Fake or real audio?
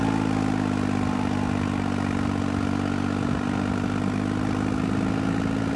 real